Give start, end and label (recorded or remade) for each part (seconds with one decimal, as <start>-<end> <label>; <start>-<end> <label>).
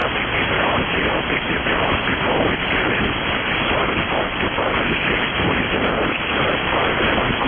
0.0-3.9 remade; 3.9-5.3 recorded; 5.3-6.3 remade; 6.3-7.5 recorded